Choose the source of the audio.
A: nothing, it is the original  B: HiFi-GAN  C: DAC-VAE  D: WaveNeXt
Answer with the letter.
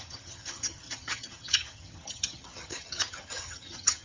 B